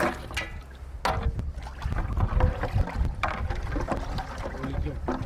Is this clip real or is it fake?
real